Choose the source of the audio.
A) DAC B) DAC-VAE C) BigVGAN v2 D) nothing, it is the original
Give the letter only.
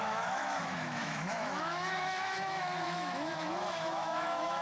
B